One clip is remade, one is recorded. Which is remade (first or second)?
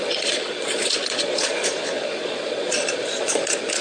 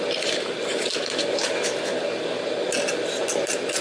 first